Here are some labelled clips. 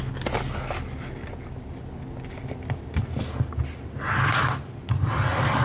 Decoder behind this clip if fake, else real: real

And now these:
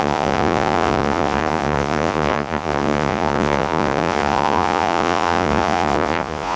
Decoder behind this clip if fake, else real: fake, vocoder, Vocos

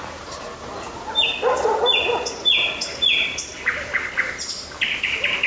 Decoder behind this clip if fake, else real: real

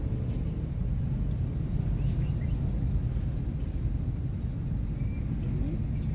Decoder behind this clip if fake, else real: real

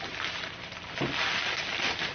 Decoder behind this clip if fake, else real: real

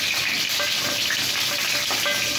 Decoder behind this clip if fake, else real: real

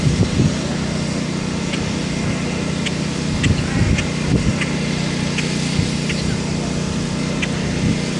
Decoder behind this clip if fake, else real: real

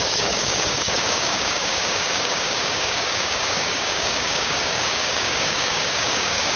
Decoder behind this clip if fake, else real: fake, codec, DAC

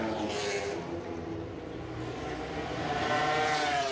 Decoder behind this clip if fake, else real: real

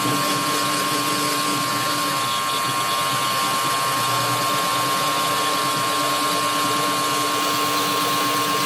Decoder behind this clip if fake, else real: real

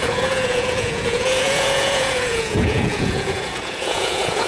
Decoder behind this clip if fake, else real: fake, vocoder, Vocos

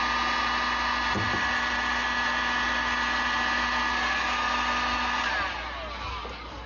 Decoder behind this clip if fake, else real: real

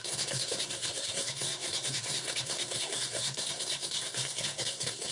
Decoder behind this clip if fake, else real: fake, codec, SNAC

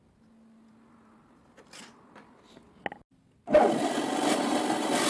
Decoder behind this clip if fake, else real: real